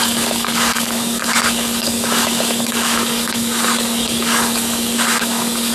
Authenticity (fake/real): fake